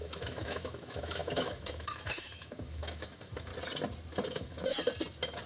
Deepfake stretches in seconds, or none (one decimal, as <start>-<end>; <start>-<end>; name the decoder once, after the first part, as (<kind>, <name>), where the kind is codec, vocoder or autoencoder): 0.0-3.5 (autoencoder, DAC-VAE); 4.1-4.8